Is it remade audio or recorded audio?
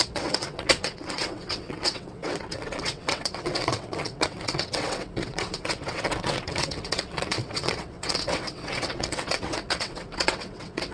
remade